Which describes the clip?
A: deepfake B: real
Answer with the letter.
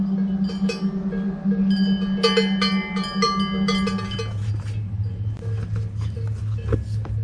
B